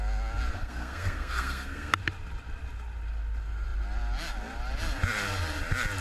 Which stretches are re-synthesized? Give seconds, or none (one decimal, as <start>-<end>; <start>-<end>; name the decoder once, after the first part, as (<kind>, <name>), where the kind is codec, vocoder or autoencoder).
0.5-1.9 (codec, SNAC)